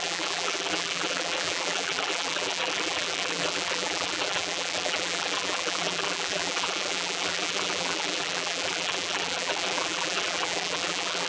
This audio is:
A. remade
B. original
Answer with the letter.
A